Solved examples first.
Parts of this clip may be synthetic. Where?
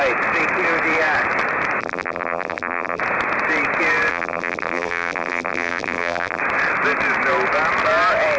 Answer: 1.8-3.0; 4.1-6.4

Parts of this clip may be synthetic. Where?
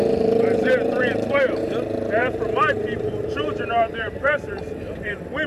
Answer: 0.0-1.6; 2.2-5.1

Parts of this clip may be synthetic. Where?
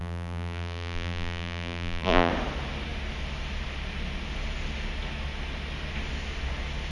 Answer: 0.0-2.3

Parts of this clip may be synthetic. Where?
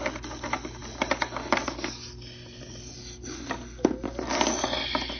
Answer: none